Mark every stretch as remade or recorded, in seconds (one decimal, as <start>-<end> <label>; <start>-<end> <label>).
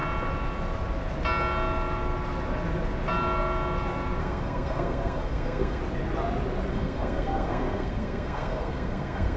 0.0-4.2 recorded; 4.2-5.8 remade; 5.8-6.7 recorded; 6.7-9.4 remade